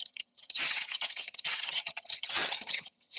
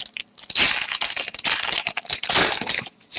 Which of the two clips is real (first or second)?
second